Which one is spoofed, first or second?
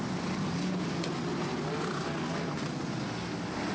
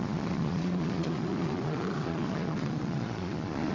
second